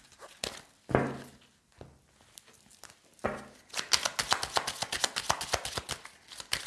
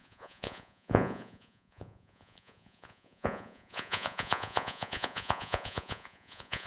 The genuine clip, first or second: first